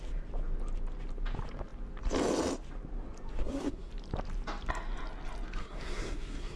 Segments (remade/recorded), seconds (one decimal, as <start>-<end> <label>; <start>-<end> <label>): 0.0-3.4 recorded; 3.4-3.9 remade; 3.9-5.6 recorded; 5.6-6.6 remade